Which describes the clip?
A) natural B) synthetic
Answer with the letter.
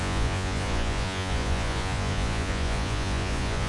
B